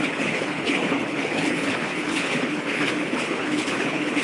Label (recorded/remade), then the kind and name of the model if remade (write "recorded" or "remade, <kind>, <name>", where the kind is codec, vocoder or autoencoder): remade, codec, HILCodec